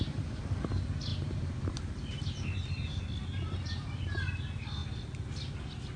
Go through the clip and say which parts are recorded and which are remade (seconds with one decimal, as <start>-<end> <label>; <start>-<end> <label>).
0.0-1.1 recorded; 1.1-1.8 remade; 1.8-6.0 recorded